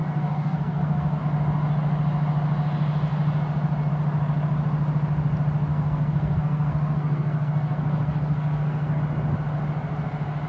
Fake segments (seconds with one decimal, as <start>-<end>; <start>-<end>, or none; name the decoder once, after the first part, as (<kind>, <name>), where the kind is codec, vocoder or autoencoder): 0.0-1.2 (codec, SNAC); 5.7-9.0